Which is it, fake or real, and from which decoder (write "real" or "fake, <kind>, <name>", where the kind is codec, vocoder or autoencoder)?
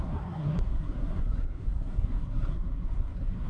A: fake, codec, SNAC